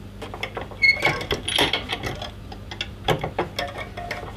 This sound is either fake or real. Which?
real